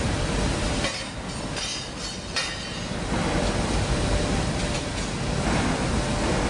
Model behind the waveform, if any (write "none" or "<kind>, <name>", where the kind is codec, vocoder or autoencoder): none